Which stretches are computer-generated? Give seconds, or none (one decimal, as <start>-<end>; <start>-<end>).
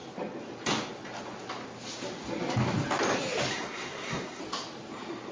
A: 3.5-4.4